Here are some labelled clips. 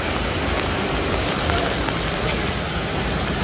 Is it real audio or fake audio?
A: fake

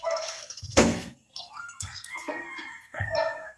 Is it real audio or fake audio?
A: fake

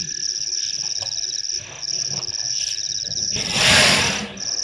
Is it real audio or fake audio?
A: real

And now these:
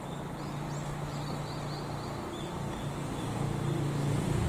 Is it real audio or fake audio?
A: real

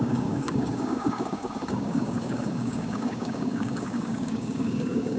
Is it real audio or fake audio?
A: fake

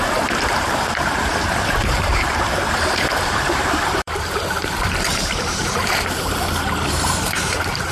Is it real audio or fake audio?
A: fake